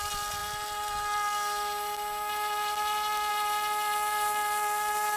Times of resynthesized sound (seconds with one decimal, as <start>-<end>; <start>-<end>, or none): none